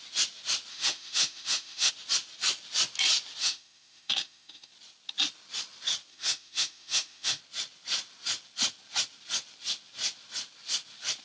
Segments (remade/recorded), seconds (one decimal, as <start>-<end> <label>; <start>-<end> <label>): 0.0-0.7 recorded; 0.7-1.9 remade; 1.9-3.4 recorded; 3.4-4.7 remade; 4.7-6.1 recorded; 6.1-7.4 remade; 7.4-11.2 recorded